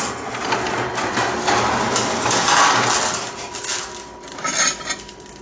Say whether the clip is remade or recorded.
recorded